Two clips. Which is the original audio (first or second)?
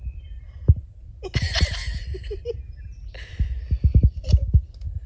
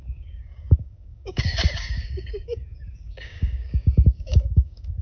first